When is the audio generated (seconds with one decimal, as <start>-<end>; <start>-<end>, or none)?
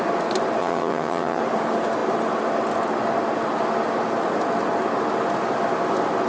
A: 0.6-1.4